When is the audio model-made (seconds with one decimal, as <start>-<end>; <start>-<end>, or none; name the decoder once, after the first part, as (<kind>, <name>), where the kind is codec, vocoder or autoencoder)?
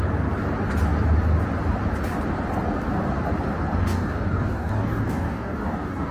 3.8-6.1 (codec, DAC)